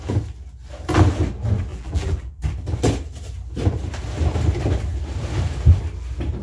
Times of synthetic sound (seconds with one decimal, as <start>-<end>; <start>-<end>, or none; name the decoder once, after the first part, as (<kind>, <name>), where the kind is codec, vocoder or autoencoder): 1.7-2.4 (vocoder, BigVGAN v2)